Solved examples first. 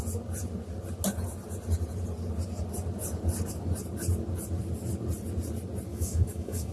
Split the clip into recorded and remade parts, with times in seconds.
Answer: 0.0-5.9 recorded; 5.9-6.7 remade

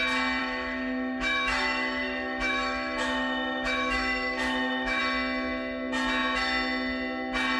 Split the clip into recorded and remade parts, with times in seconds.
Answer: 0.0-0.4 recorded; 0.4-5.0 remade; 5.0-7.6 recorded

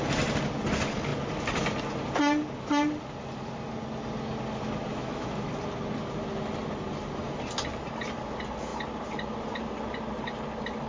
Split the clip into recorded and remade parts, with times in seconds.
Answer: 0.0-4.9 recorded; 4.9-5.6 remade; 5.6-10.9 recorded

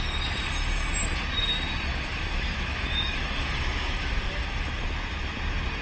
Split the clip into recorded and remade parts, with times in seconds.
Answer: 0.0-1.9 recorded; 1.9-4.8 remade; 4.8-5.8 recorded